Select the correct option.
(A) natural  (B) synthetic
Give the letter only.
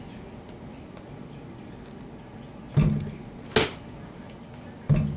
A